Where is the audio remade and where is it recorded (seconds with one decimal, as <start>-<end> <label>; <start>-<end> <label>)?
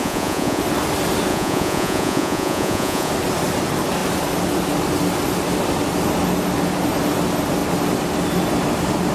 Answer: 0.0-0.6 remade; 0.6-1.3 recorded; 1.3-3.1 remade; 3.1-9.1 recorded